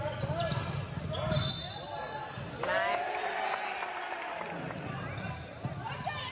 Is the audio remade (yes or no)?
no